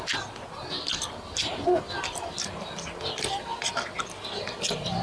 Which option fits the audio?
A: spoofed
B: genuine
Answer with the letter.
B